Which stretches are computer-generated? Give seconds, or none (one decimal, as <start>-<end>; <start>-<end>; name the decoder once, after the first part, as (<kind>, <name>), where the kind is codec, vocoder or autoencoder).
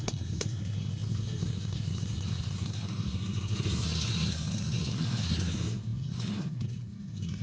0.0-7.4 (codec, SNAC)